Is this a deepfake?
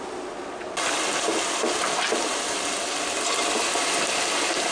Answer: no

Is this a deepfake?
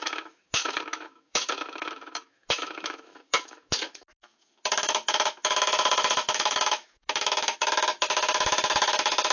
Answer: yes